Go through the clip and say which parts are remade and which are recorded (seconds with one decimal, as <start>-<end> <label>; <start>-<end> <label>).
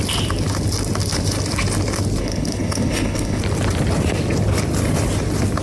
0.0-2.2 recorded; 2.2-3.4 remade; 3.4-5.6 recorded